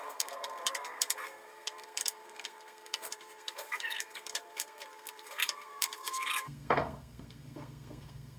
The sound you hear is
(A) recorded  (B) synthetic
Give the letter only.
B